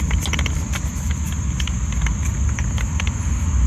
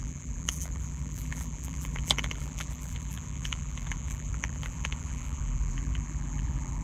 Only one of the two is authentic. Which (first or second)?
first